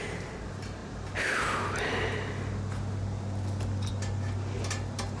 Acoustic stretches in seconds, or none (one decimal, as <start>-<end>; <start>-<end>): 0.0-5.2